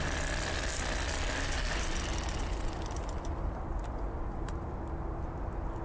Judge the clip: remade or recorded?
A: recorded